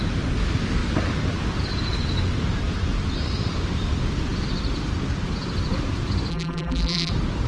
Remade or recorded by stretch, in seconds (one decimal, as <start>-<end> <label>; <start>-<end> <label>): 0.0-6.3 recorded; 6.3-7.1 remade; 7.1-7.5 recorded